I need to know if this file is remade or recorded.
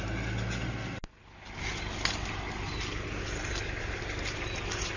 recorded